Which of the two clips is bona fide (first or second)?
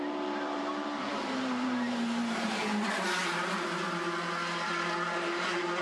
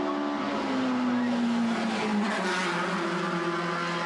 second